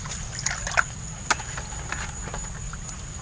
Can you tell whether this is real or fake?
real